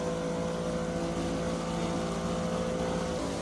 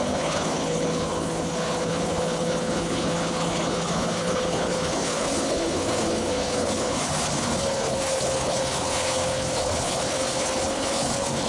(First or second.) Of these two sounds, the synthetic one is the second